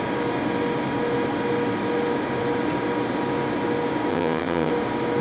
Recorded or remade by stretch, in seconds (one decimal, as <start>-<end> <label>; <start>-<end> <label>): 0.0-4.1 recorded; 4.1-4.7 remade; 4.7-5.2 recorded

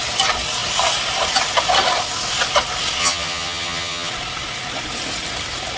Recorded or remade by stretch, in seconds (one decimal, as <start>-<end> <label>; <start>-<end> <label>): 0.0-3.0 recorded; 3.0-4.1 remade; 4.1-5.8 recorded

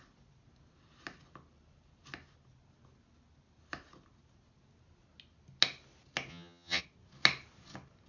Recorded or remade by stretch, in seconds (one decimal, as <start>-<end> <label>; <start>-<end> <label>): 0.0-6.3 recorded; 6.3-6.8 remade; 6.8-8.1 recorded

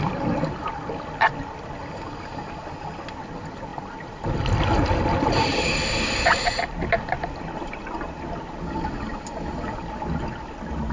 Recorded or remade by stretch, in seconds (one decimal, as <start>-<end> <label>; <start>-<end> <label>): 0.0-10.9 recorded